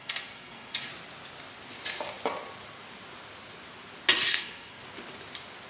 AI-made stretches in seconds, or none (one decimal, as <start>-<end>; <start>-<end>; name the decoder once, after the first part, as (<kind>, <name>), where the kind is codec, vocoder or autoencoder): 0.0-0.9 (codec, SNAC); 4.3-4.8

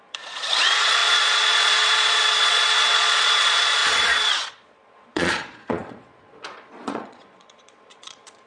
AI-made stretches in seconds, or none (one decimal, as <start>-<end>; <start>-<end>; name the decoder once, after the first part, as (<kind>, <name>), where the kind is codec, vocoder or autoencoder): 0.0-8.5 (vocoder, Vocos)

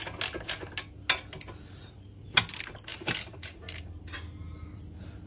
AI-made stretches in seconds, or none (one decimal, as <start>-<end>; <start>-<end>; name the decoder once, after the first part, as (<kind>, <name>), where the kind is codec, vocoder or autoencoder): 2.9-4.0 (vocoder, BigVGAN v2)

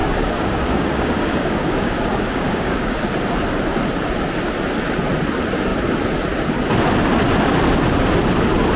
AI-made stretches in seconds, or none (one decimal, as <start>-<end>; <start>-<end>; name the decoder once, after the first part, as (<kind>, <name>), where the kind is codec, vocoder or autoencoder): 0.0-3.0 (codec, DAC)

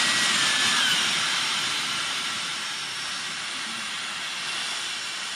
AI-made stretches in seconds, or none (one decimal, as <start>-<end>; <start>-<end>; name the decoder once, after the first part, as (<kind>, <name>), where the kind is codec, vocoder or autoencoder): 0.9-4.1 (vocoder, BigVGAN v2)

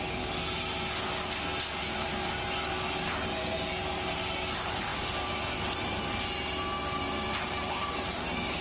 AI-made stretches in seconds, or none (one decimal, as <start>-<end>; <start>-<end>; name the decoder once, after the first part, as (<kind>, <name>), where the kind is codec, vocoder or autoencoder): none

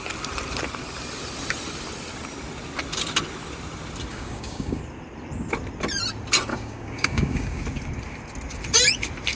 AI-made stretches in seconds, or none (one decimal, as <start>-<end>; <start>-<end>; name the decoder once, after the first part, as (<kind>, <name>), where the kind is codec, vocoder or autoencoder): 4.1-4.8 (codec, DAC); 6.5-7.6